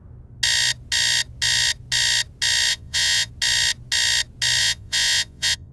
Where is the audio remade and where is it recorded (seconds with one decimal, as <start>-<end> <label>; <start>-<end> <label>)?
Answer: 0.0-2.7 recorded; 2.7-3.3 remade; 3.3-4.6 recorded; 4.6-5.7 remade